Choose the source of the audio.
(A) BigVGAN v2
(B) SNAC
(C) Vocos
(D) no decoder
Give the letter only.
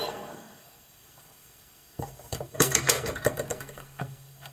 B